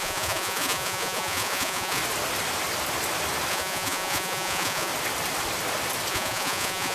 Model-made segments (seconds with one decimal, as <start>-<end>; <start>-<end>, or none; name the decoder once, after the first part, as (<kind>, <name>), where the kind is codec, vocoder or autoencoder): 0.0-2.0 (vocoder, Vocos); 3.5-4.9; 6.1-6.9

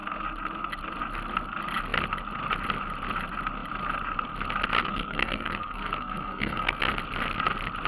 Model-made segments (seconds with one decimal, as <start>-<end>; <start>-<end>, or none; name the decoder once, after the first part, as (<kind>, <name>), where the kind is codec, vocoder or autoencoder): 4.8-6.8 (codec, SNAC)

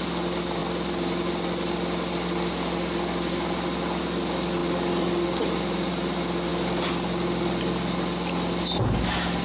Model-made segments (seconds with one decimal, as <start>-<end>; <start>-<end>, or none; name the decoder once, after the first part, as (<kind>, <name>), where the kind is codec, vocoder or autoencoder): none